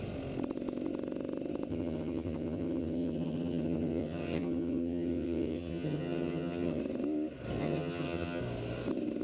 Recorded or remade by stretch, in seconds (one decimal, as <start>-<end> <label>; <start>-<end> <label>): 0.0-1.7 recorded; 1.7-6.8 remade; 6.8-7.6 recorded; 7.6-8.4 remade; 8.4-9.2 recorded